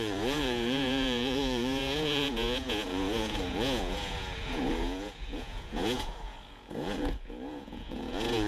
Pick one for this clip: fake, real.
fake